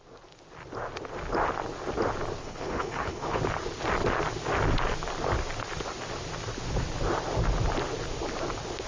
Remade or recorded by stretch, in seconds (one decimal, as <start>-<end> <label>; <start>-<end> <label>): 0.0-2.4 recorded; 2.4-3.4 remade; 3.4-8.9 recorded